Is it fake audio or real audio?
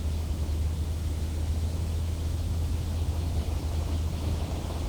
fake